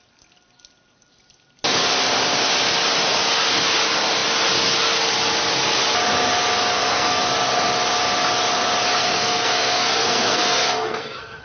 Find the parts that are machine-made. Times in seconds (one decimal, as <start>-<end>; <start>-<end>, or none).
6.7-7.2; 9.0-11.4